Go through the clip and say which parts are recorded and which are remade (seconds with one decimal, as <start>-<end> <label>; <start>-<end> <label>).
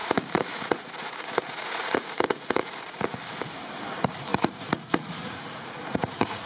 0.0-3.0 remade; 3.0-4.3 recorded; 4.3-6.5 remade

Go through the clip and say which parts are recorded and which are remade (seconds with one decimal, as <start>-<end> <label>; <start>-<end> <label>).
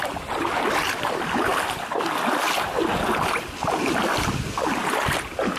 0.0-5.6 recorded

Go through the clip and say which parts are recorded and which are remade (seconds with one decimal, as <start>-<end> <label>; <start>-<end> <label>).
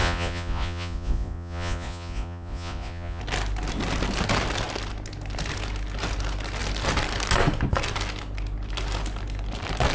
0.0-3.2 remade; 3.2-9.9 recorded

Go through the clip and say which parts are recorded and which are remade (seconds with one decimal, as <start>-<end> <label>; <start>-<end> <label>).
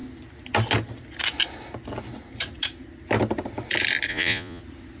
0.0-4.1 recorded; 4.1-4.6 remade; 4.6-5.0 recorded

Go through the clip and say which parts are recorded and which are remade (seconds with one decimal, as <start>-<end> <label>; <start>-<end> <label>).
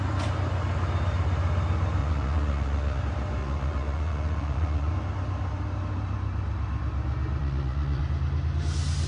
0.0-2.0 recorded; 2.0-3.0 remade; 3.0-3.4 recorded; 3.4-4.9 remade; 4.9-7.4 recorded; 7.4-8.0 remade; 8.0-9.1 recorded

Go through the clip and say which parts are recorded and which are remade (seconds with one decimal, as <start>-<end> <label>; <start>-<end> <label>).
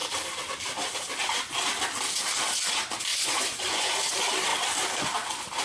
0.0-3.1 recorded; 3.1-4.1 remade; 4.1-5.6 recorded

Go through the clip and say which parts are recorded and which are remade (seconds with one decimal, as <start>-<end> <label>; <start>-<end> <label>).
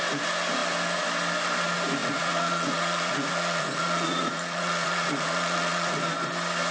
0.0-2.0 recorded; 2.0-6.0 remade; 6.0-6.7 recorded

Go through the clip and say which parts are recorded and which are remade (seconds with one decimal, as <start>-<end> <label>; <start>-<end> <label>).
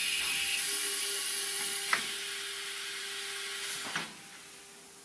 0.0-5.0 recorded